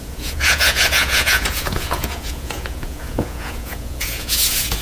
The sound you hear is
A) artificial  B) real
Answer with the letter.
A